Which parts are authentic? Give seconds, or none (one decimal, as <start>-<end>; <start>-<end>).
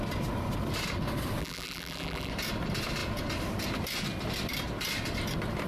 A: 0.0-1.4; 2.3-5.7